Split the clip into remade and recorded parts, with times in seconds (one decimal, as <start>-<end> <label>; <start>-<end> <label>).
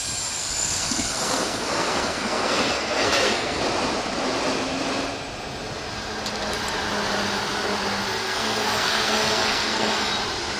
0.0-0.4 recorded; 0.4-3.6 remade; 3.6-8.2 recorded; 8.2-10.1 remade; 10.1-10.6 recorded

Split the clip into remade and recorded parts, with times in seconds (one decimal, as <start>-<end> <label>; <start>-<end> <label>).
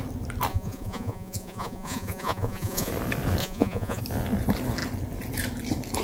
0.0-0.5 recorded; 0.5-2.9 remade; 2.9-3.4 recorded; 3.4-4.0 remade; 4.0-6.0 recorded